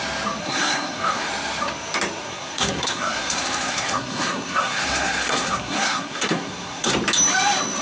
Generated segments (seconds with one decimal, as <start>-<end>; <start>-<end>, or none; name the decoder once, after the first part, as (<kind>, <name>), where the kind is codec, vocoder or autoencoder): 0.4-1.3 (codec, SNAC); 2.2-6.9